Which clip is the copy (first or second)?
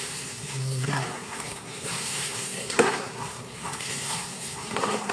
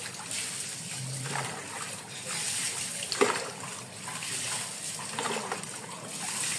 first